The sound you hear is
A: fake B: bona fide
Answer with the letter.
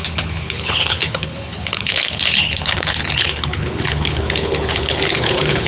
A